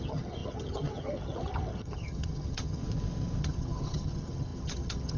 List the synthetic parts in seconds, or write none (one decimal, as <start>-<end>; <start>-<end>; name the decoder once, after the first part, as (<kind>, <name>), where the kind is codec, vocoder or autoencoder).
0.0-2.8 (vocoder, HiFi-GAN); 3.4-5.2